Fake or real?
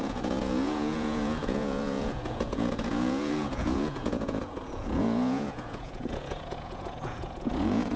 fake